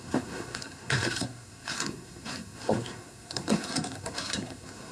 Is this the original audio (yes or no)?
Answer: no